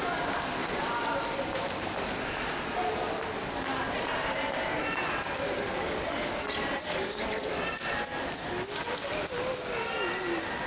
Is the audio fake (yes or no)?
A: no